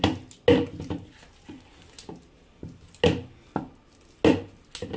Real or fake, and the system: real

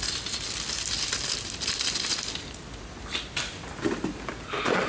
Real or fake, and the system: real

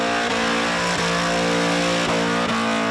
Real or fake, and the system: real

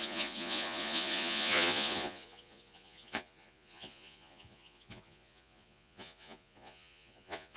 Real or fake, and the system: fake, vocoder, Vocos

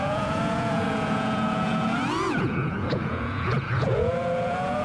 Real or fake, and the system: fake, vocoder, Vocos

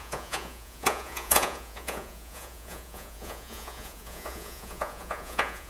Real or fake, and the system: fake, vocoder, Vocos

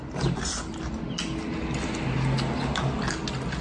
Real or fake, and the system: real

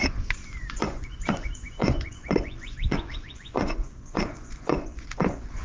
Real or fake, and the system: fake, vocoder, Vocos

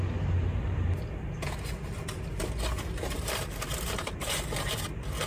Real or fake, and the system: real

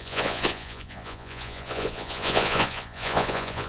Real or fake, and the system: fake, vocoder, Vocos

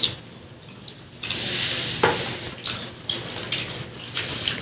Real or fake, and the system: real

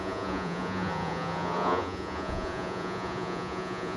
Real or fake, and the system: fake, vocoder, Vocos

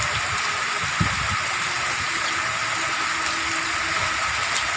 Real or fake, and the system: real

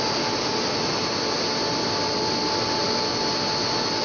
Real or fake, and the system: real